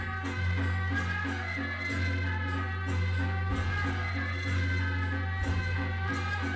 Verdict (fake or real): real